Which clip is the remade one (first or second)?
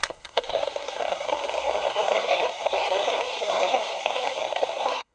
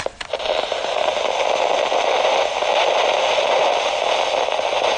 first